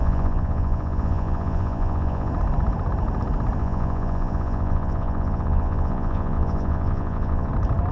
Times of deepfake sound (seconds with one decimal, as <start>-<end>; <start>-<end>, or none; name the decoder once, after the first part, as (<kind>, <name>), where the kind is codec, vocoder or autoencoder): 0.0-2.3 (vocoder, Vocos); 3.6-7.5